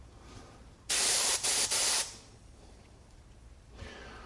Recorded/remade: remade